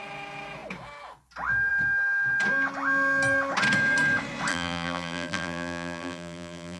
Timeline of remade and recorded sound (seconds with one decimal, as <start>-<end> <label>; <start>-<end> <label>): 0.0-4.5 recorded; 4.5-6.8 remade